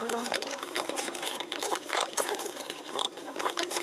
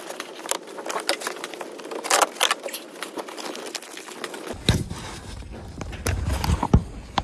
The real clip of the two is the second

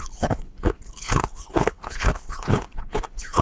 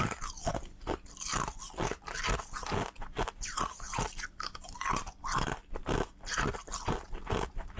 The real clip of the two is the second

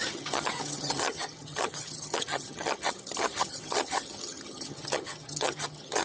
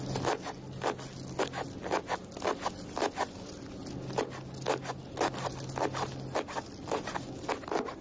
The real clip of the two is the second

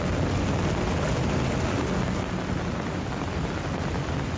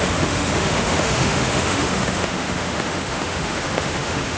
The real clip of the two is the first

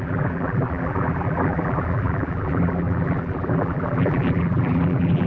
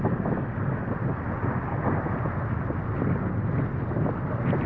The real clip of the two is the second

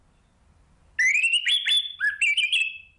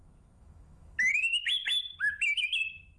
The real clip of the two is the first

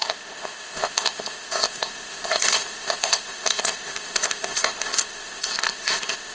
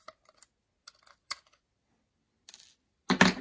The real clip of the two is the second